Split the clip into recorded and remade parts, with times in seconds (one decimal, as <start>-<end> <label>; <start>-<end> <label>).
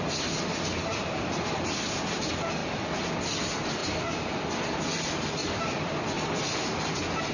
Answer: 0.0-0.9 recorded; 0.9-1.8 remade; 1.8-5.4 recorded; 5.4-6.7 remade; 6.7-7.3 recorded